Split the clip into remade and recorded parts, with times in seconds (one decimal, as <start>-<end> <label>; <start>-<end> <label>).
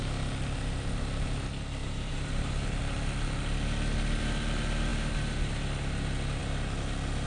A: 0.0-1.8 recorded; 1.8-2.5 remade; 2.5-7.3 recorded